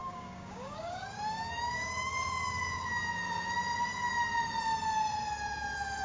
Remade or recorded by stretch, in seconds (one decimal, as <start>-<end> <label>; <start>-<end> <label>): 0.0-2.6 remade; 2.6-6.0 recorded